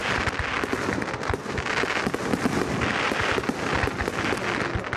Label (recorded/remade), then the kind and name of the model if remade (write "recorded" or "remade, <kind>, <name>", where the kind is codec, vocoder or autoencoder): recorded